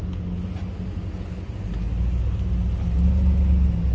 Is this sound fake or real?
real